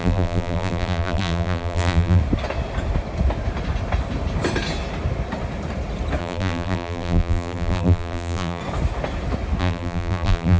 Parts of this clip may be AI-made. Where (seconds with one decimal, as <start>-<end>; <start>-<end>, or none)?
0.0-2.2; 6.2-8.6; 9.6-10.6